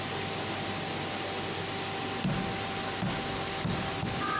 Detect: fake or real real